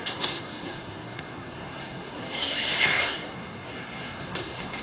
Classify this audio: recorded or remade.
remade